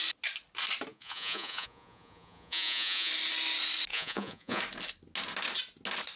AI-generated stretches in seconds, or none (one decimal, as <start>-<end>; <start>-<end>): 0.9-3.1; 3.9-4.6